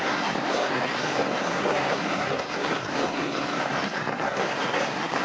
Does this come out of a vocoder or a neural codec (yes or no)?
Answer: yes